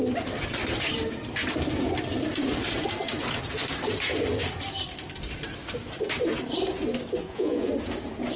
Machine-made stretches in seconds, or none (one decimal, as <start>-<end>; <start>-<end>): 7.2-7.7